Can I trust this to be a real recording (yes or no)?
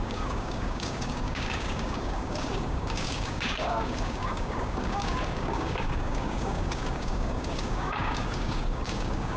no